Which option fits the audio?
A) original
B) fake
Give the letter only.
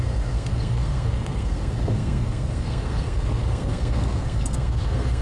B